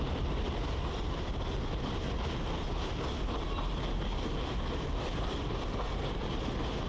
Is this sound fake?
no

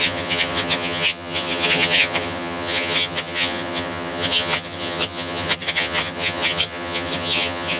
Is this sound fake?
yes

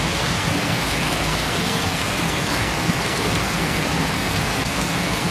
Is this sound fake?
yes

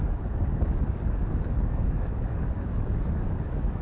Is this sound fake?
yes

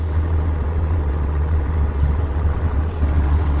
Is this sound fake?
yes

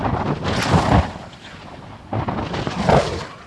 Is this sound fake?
yes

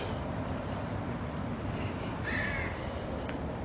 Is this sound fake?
no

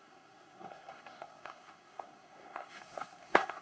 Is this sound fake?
yes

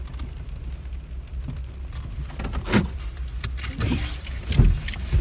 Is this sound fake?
no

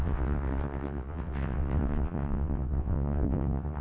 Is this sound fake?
yes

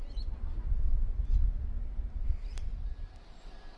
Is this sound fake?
no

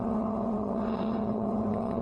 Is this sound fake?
yes